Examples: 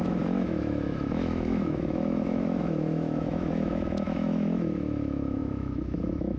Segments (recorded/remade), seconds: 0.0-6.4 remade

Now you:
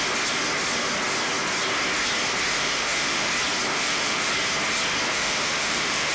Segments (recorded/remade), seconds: 0.0-2.5 recorded; 2.5-3.3 remade; 3.3-3.7 recorded; 3.7-4.3 remade; 4.3-5.1 recorded; 5.1-6.1 remade

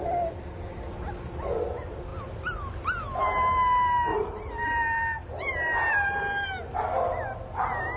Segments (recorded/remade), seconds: 0.0-8.0 recorded

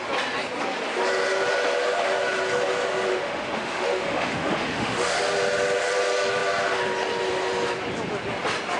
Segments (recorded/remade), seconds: 0.0-3.1 recorded; 3.1-5.2 remade; 5.2-8.8 recorded

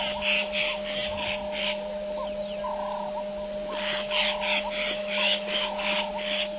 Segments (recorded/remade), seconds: 0.0-5.0 recorded; 5.0-6.1 remade; 6.1-6.6 recorded

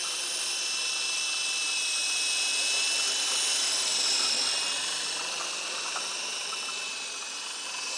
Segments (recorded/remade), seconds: 0.0-8.0 recorded

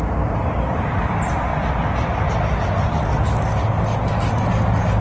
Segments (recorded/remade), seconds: 0.0-5.0 recorded

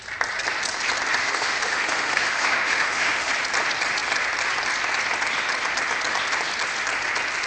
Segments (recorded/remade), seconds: 0.0-1.2 recorded; 1.2-3.3 remade; 3.3-7.5 recorded